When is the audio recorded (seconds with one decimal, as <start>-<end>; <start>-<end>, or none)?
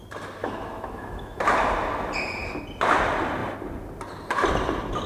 0.0-0.4; 1.4-5.1